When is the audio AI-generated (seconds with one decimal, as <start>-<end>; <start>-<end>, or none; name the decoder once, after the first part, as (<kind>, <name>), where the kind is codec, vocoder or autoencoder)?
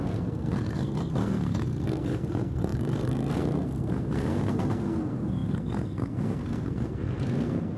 0.0-7.8 (codec, SNAC)